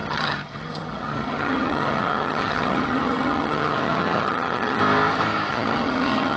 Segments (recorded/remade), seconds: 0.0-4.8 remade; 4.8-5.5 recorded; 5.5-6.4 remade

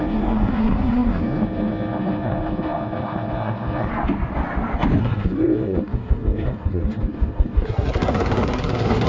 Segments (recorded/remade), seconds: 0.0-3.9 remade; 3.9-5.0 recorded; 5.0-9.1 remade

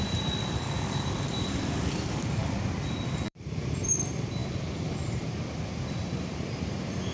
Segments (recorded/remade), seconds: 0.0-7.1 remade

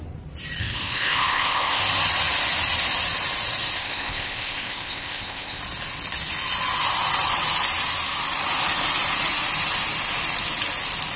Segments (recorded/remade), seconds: 0.0-0.6 recorded; 0.6-1.8 remade; 1.8-3.8 recorded; 3.8-5.6 remade; 5.6-11.2 recorded

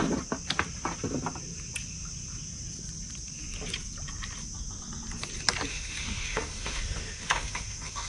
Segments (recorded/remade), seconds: 0.0-5.7 recorded; 5.7-8.1 remade

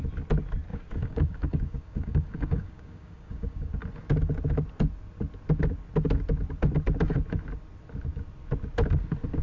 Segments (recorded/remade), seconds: 0.0-0.7 recorded; 0.7-3.7 remade; 3.7-9.4 recorded